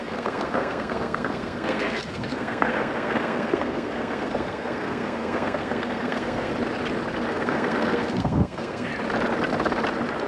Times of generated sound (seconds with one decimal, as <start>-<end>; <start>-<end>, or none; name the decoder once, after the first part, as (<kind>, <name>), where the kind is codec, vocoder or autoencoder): 0.0-6.5 (codec, SNAC); 7.3-8.9